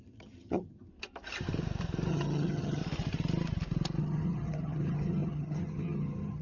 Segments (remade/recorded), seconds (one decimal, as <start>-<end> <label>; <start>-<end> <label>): 0.0-0.9 remade; 0.9-2.1 recorded; 2.1-2.8 remade; 2.8-4.0 recorded; 4.0-6.4 remade